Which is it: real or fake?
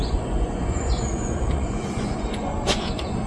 fake